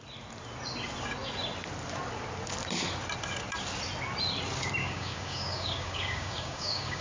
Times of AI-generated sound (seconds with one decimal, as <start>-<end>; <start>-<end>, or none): 4.8-7.0